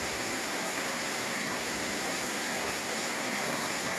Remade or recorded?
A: remade